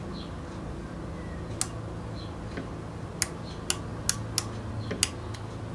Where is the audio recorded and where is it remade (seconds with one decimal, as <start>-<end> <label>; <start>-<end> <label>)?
0.0-5.7 recorded